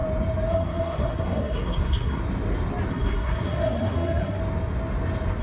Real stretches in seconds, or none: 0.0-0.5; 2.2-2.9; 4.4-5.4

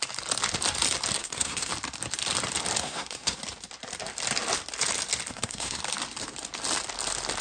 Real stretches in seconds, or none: 0.0-1.2; 1.7-2.8; 3.4-5.3; 5.8-7.4

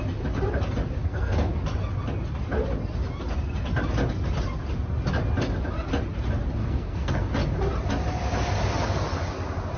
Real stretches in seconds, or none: 0.0-1.0; 1.6-6.6; 7.3-9.8

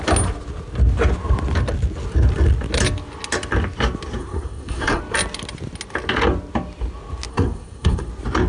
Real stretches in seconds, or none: 0.0-4.2; 5.0-7.3; 8.1-8.5